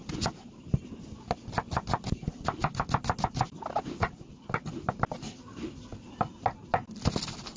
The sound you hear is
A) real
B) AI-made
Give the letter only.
A